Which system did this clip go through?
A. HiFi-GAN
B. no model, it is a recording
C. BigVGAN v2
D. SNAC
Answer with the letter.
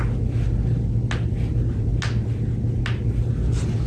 B